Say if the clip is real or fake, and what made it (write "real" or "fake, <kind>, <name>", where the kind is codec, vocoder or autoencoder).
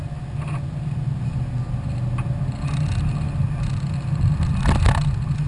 real